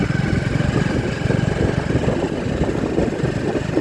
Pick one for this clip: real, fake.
fake